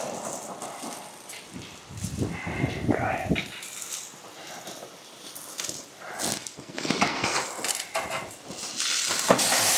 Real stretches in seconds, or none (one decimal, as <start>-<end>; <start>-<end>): 0.0-6.4; 7.5-9.8